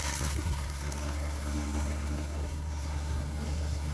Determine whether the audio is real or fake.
fake